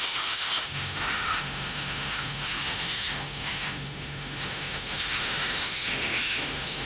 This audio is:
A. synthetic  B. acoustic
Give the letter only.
A